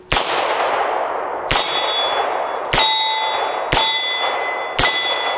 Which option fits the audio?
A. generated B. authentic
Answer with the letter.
B